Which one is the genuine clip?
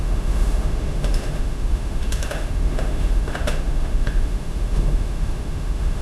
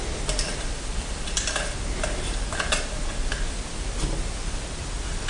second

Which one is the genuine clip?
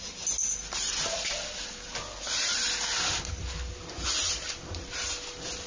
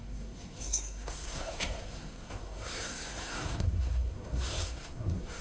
first